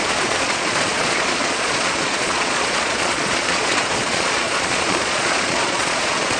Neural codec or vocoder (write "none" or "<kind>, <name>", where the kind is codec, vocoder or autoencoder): vocoder, Vocos